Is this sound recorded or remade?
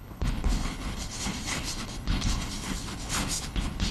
remade